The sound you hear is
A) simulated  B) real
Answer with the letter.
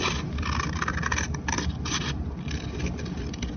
B